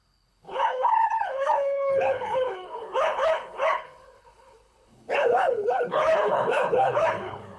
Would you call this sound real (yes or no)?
no